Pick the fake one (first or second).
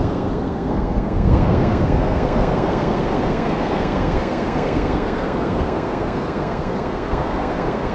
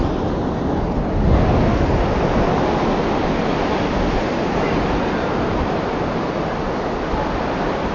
first